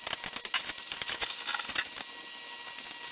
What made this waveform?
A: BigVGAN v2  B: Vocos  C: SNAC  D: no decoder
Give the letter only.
D